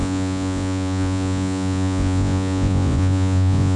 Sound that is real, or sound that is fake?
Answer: fake